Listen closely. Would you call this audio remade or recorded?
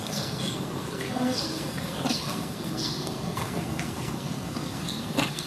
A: remade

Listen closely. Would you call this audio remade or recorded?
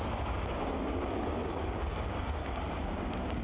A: remade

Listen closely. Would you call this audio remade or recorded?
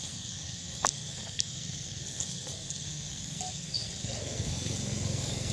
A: remade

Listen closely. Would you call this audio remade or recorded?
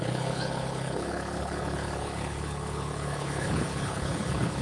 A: remade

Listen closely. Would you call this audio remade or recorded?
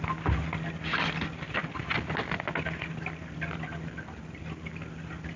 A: recorded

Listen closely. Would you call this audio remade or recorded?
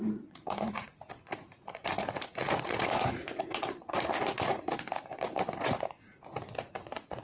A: remade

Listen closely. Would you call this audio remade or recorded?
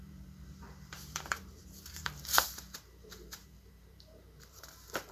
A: remade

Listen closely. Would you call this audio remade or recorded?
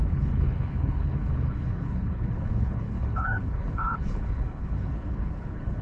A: remade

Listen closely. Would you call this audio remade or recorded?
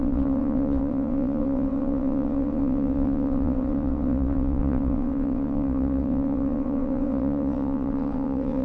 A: remade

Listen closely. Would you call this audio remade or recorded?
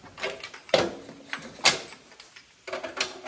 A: recorded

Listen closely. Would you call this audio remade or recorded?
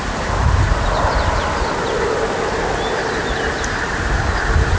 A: recorded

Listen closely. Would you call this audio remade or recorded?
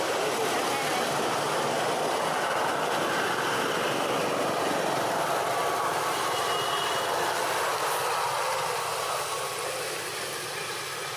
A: recorded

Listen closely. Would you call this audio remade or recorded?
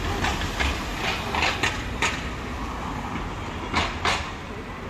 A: recorded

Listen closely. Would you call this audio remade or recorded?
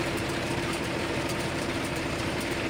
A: remade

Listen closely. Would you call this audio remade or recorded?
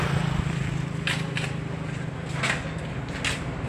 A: recorded